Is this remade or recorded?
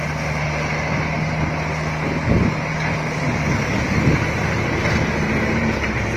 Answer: recorded